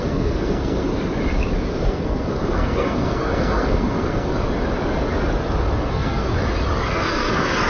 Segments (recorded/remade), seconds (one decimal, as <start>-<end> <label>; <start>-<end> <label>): 0.0-0.9 remade; 0.9-1.7 recorded; 1.7-4.3 remade; 4.3-5.8 recorded; 5.8-6.3 remade; 6.3-6.9 recorded; 6.9-7.7 remade